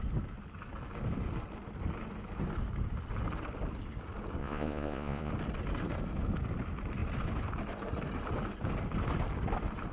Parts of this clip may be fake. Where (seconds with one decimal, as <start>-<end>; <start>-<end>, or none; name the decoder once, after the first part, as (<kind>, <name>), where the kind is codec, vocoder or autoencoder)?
4.4-5.3 (vocoder, Vocos)